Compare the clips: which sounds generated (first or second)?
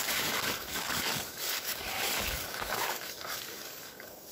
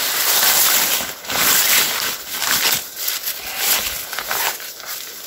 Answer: first